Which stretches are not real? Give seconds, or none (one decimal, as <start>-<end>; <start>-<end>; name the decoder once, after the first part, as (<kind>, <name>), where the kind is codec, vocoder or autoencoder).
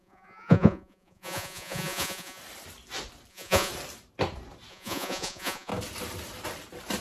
0.0-2.4 (vocoder, Vocos); 3.3-3.7; 4.7-5.7